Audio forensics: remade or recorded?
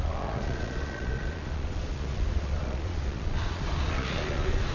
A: remade